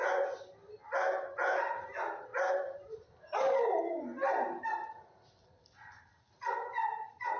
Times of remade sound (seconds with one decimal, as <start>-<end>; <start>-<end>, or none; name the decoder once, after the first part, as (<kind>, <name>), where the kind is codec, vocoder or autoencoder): none